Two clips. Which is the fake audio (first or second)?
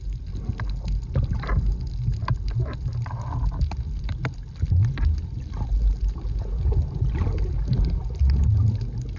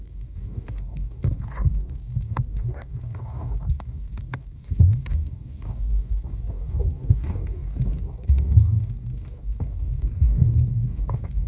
second